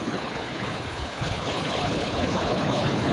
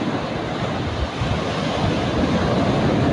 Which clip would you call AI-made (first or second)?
first